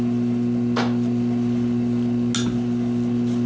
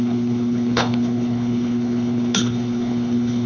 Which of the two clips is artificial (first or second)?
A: second